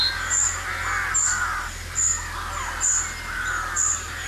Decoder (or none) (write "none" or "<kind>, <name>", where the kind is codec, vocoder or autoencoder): none